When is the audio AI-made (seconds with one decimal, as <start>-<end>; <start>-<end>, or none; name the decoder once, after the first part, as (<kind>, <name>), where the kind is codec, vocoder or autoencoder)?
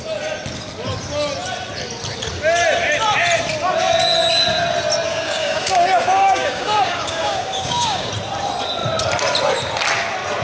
5.1-8.1 (codec, DAC)